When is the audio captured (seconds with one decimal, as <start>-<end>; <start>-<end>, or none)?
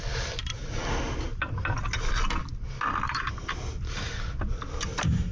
0.0-5.3